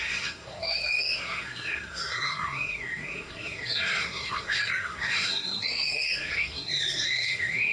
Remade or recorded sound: remade